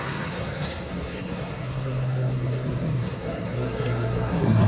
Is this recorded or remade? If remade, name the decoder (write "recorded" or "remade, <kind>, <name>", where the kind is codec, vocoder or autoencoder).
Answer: remade, codec, SNAC